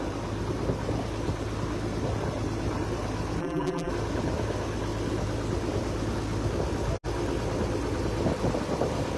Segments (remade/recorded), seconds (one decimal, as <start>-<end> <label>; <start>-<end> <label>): 0.0-3.4 recorded; 3.4-3.9 remade; 3.9-9.2 recorded